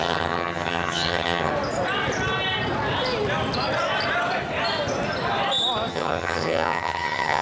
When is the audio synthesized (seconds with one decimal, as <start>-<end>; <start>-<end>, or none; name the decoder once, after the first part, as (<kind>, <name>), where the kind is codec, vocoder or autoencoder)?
0.0-1.5 (vocoder, HiFi-GAN); 5.9-7.4

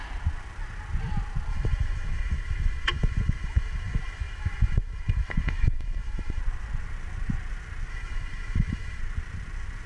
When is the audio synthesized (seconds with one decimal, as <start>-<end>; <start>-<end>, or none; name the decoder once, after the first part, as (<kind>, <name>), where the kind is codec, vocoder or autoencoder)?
1.5-6.4 (autoencoder, DAC-VAE); 7.9-9.0

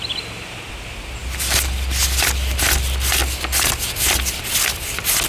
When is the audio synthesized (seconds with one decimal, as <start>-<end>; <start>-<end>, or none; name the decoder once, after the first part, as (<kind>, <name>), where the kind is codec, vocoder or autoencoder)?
none

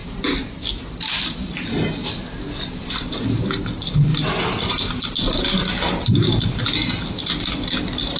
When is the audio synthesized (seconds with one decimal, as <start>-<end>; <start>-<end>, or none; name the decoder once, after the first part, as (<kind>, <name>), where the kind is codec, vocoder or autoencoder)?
none

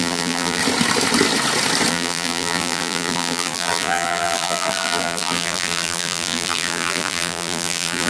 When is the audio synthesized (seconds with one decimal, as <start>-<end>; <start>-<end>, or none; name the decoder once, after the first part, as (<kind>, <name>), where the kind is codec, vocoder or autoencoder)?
0.0-0.6 (vocoder, BigVGAN v2); 1.9-8.1

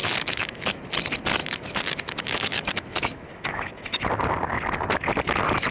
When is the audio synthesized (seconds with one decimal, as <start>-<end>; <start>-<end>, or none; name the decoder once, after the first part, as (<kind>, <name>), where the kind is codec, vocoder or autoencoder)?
0.0-0.8 (autoencoder, DAC-VAE); 1.4-3.7